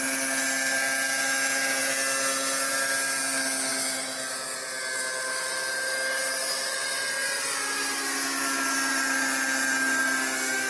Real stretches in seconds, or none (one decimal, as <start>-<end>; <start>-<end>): 0.0-10.7